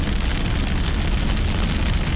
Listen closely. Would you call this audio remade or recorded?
recorded